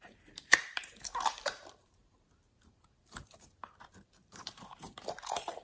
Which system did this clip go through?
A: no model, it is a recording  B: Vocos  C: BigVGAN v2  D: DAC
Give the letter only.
C